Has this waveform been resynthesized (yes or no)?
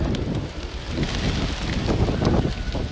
no